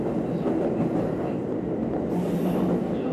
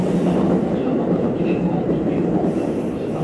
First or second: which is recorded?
first